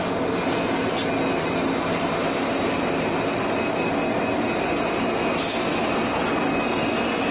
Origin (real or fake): real